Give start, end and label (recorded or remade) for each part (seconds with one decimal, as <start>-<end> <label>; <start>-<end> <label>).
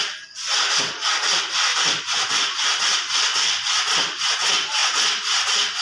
0.0-5.8 recorded